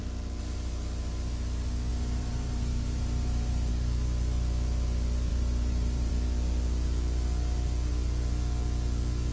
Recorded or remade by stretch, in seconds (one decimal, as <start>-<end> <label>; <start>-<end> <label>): 0.0-1.9 recorded; 1.9-3.7 remade; 3.7-5.3 recorded; 5.3-6.1 remade; 6.1-9.3 recorded